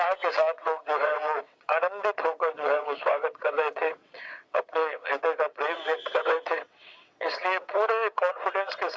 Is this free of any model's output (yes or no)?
no